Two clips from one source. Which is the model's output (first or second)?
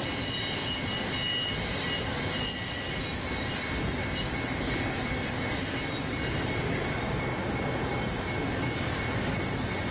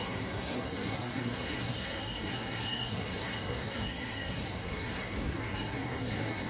second